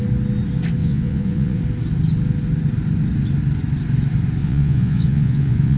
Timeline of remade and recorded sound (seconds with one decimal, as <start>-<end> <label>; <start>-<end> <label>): 0.0-0.8 recorded; 0.8-1.6 remade; 1.6-4.4 recorded; 4.4-5.8 remade